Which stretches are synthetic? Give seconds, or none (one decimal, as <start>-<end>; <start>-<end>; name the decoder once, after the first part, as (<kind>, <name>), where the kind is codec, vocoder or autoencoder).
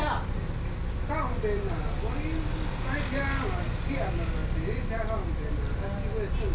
none